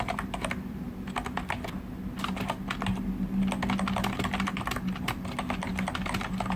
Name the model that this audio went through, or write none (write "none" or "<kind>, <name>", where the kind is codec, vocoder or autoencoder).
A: none